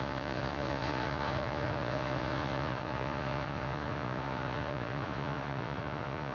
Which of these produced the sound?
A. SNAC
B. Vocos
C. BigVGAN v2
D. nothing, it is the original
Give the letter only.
B